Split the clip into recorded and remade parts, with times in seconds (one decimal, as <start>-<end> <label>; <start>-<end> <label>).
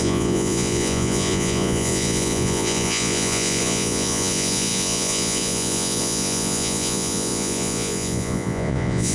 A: 0.0-9.1 remade